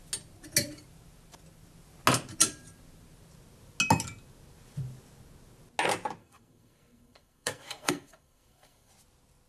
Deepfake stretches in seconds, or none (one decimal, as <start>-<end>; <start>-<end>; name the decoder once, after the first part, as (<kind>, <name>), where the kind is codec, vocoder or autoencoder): 6.2-8.9 (codec, SNAC)